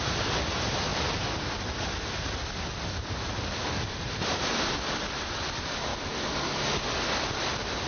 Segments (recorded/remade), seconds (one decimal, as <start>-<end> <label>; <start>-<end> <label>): 0.0-0.9 remade; 0.9-3.7 recorded; 3.7-5.9 remade; 5.9-7.9 recorded